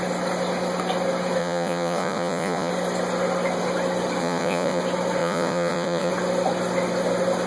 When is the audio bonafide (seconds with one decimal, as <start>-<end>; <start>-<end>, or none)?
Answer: 0.0-1.4; 2.7-4.2; 4.8-5.2; 6.1-7.5